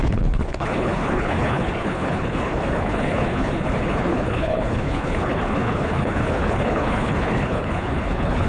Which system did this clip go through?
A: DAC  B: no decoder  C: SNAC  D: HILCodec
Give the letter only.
D